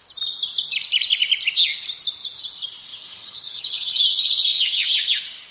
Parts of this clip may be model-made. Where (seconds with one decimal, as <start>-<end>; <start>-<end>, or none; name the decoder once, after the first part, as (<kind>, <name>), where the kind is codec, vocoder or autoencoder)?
2.9-4.0 (vocoder, HiFi-GAN); 4.5-5.0